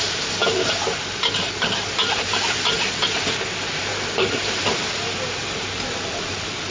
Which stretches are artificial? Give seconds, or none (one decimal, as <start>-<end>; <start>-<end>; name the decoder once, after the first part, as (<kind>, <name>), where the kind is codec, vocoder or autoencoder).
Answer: 0.0-0.4 (vocoder, BigVGAN v2); 3.5-6.7